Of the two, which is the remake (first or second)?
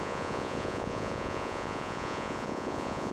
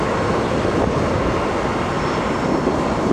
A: first